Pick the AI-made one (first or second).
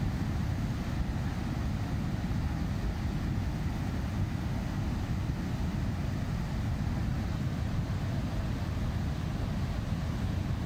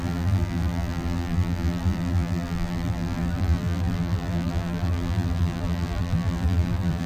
second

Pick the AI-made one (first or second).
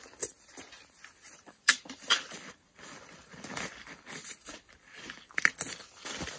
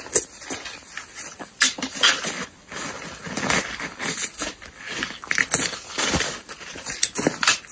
first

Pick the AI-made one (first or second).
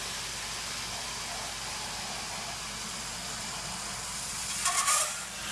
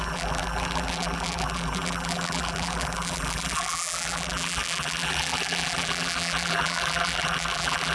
second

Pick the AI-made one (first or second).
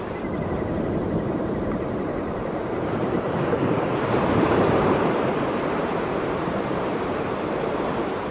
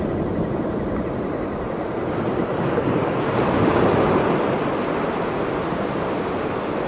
first